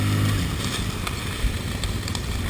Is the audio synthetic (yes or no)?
no